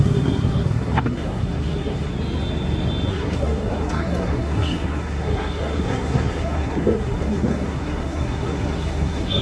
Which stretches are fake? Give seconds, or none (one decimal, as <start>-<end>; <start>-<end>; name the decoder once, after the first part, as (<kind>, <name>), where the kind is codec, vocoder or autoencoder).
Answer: 0.0-2.1 (codec, SNAC); 3.1-9.4